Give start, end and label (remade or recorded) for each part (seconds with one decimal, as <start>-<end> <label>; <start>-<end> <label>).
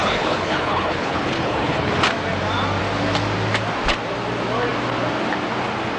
0.0-1.9 remade; 1.9-6.0 recorded